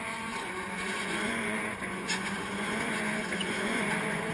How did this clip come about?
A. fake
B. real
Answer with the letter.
A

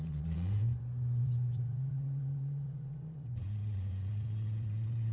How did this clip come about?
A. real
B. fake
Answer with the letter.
B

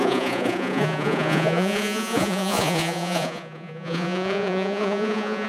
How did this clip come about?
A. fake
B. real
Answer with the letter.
A